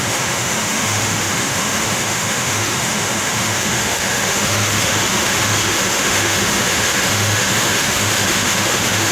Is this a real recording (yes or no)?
no